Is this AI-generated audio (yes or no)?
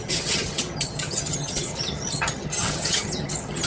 yes